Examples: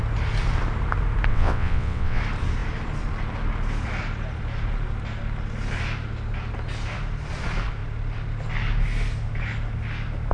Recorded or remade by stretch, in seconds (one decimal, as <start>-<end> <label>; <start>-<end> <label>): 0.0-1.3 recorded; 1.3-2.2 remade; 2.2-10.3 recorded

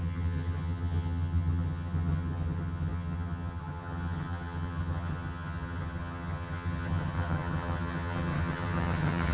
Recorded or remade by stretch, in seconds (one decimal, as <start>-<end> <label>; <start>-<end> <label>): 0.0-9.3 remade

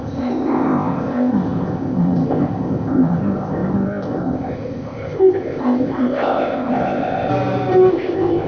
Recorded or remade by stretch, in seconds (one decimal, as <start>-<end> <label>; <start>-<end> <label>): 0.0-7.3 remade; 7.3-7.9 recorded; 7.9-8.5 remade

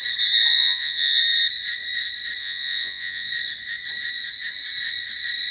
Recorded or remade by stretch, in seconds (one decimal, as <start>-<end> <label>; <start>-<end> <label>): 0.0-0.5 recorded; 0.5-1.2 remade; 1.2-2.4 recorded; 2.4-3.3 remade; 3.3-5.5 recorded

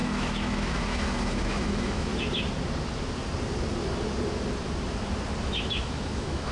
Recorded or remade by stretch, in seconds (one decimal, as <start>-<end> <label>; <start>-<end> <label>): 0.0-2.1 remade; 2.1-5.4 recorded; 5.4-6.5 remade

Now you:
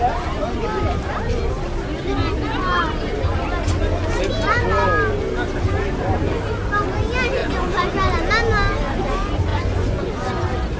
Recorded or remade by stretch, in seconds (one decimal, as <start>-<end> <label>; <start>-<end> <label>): 0.0-7.4 recorded; 7.4-7.9 remade; 7.9-9.5 recorded; 9.5-10.1 remade; 10.1-10.8 recorded

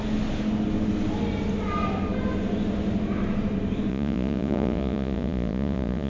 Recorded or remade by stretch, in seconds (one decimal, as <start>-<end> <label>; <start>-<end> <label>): 0.0-3.9 recorded; 3.9-6.1 remade

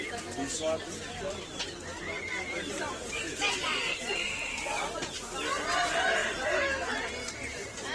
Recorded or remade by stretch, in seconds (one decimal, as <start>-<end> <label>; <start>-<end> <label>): 0.0-3.3 recorded; 3.3-4.3 remade; 4.3-6.2 recorded; 6.2-7.1 remade; 7.1-7.9 recorded